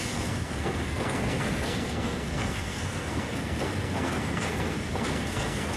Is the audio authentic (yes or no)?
no